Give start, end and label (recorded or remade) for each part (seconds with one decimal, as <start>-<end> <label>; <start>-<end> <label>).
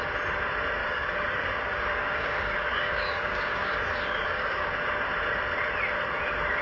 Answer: 0.0-0.8 recorded; 0.8-4.7 remade; 4.7-6.6 recorded